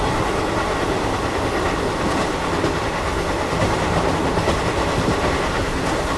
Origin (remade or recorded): recorded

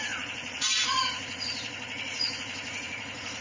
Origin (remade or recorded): remade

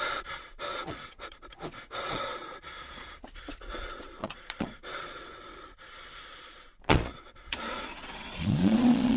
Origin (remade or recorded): remade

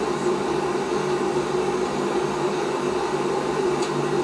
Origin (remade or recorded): recorded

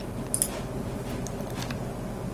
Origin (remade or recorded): recorded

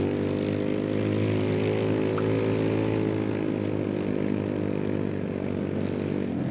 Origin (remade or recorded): recorded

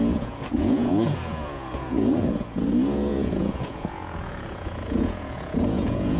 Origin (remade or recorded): remade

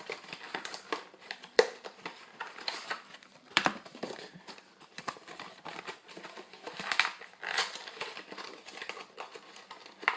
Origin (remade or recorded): remade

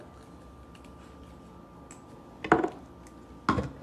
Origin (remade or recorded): recorded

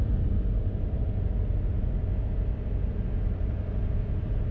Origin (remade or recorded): recorded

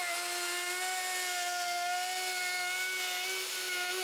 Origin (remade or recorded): recorded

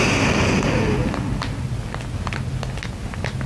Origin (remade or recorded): recorded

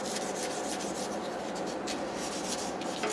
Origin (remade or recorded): recorded